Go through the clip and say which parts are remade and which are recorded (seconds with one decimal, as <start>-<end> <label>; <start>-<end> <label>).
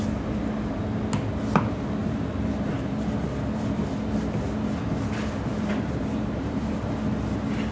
0.0-2.0 recorded; 2.0-2.9 remade; 2.9-5.5 recorded; 5.5-6.8 remade; 6.8-7.7 recorded